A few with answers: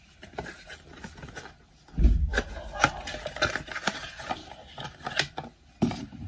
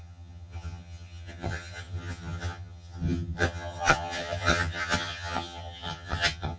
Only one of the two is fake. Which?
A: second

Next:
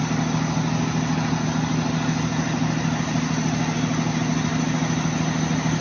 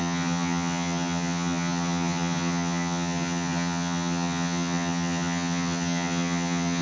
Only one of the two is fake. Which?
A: second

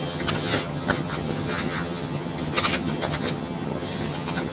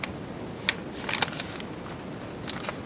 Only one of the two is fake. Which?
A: first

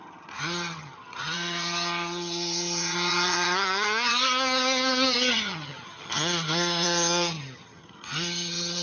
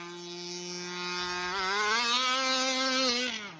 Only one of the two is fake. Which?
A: first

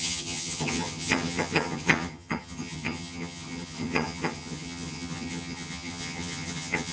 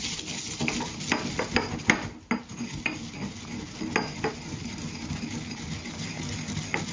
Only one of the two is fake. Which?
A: first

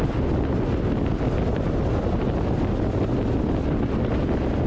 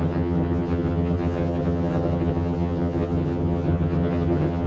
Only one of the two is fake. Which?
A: second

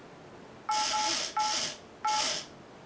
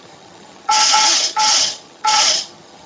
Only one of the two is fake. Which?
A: second